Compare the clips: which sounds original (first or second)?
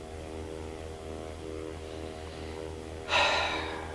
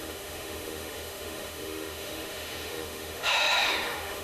first